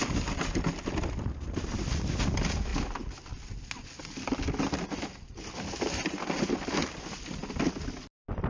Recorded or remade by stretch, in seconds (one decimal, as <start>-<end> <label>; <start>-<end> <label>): 0.0-8.5 recorded